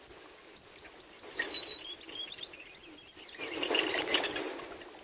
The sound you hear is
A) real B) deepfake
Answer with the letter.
A